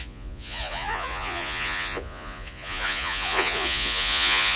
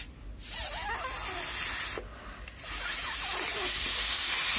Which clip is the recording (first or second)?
second